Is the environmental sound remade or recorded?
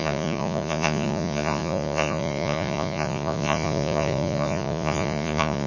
remade